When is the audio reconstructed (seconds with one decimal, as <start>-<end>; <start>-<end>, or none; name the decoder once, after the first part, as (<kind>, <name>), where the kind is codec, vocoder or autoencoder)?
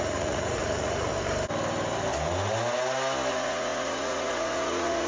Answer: 0.0-1.1 (vocoder, Vocos); 3.3-5.1